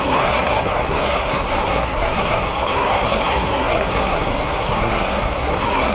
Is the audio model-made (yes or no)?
yes